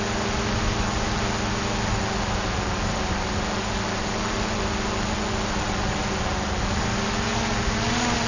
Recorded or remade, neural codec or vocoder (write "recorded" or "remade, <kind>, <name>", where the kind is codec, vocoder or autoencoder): recorded